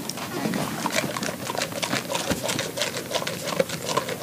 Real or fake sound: real